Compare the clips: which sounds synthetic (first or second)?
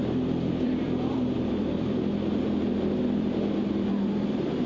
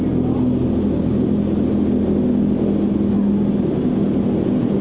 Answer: first